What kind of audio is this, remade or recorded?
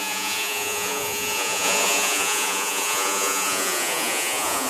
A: remade